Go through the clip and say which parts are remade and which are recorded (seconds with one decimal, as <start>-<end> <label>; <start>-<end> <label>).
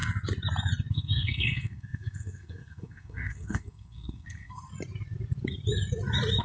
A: 0.0-0.9 recorded; 0.9-4.7 remade; 4.7-6.4 recorded